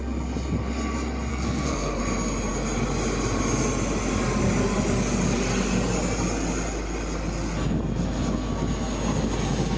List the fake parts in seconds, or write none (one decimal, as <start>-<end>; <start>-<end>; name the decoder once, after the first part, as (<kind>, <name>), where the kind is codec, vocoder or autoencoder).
1.3-2.0 (codec, SNAC)